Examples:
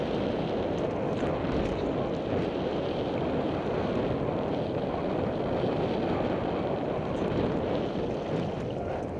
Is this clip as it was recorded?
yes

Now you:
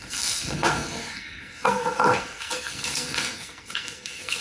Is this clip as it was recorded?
no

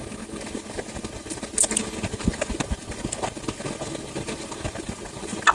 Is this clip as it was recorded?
yes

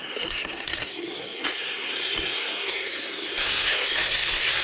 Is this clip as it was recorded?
no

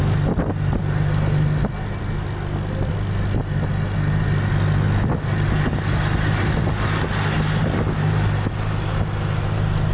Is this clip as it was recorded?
yes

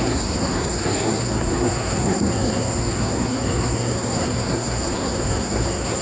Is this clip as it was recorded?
no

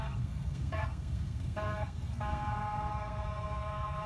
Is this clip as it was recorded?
no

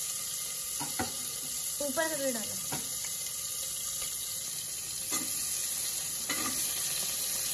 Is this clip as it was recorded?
yes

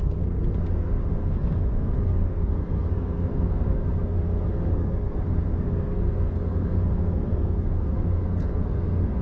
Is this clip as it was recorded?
no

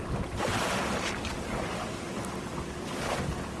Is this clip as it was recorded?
yes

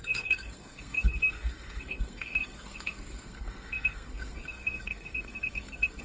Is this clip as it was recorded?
no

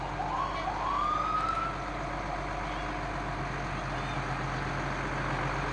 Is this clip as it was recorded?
yes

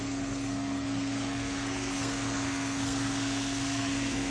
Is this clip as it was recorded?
no